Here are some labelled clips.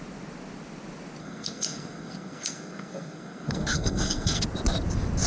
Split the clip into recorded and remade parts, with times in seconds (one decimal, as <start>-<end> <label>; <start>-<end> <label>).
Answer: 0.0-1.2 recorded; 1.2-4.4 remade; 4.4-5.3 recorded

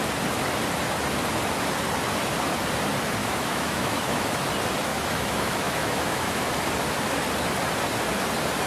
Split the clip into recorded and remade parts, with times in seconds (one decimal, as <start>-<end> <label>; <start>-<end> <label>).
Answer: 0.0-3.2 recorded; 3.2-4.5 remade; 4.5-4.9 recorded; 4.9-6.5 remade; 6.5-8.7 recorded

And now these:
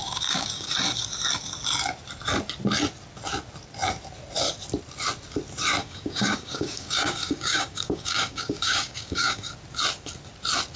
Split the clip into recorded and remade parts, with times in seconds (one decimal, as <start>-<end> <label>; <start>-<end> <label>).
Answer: 0.0-0.7 remade; 0.7-5.8 recorded; 5.8-9.5 remade; 9.5-10.8 recorded

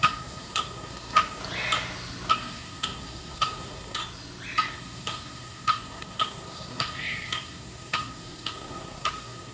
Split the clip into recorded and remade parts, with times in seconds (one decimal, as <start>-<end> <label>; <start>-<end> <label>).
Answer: 0.0-1.4 remade; 1.4-2.3 recorded; 2.3-4.0 remade; 4.0-4.7 recorded; 4.7-9.5 remade

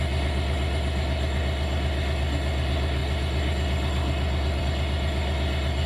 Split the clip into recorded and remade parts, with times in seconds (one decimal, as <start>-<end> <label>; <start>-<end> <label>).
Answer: 0.0-5.9 recorded

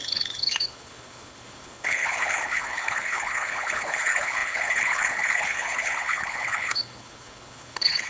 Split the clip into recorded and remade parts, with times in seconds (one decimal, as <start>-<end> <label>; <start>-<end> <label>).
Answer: 0.0-8.1 remade